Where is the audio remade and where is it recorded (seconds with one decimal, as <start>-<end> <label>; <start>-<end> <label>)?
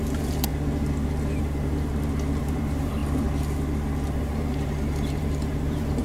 0.0-0.5 remade; 0.5-1.4 recorded; 1.4-1.9 remade; 1.9-2.4 recorded; 2.4-3.0 remade; 3.0-4.1 recorded; 4.1-6.0 remade